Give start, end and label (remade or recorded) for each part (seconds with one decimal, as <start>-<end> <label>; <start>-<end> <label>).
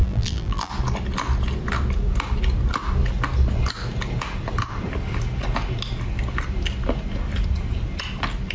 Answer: 0.0-0.7 remade; 0.7-8.5 recorded